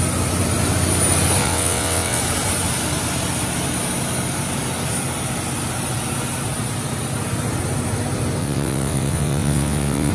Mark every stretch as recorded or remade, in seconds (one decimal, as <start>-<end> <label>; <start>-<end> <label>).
0.0-1.4 recorded; 1.4-2.2 remade; 2.2-8.4 recorded; 8.4-10.1 remade